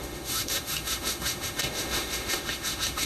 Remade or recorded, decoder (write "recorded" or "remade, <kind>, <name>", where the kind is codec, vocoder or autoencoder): remade, autoencoder, DAC-VAE